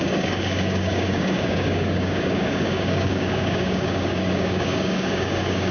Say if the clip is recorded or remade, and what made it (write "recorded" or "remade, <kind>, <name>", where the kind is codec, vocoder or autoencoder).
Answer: remade, codec, DAC